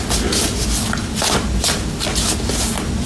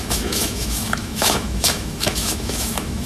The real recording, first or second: first